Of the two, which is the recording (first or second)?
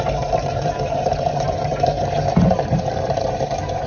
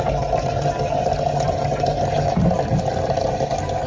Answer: second